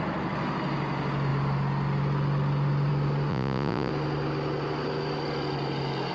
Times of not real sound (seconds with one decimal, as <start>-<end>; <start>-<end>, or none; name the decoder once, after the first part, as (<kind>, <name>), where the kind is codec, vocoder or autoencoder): 3.3-3.9 (vocoder, Vocos)